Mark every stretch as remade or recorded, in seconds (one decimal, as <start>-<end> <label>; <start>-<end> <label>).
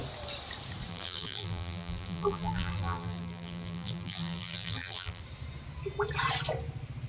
0.0-0.9 recorded; 0.9-5.2 remade; 5.2-7.1 recorded